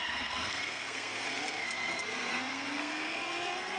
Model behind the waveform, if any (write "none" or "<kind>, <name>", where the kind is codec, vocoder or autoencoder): codec, SNAC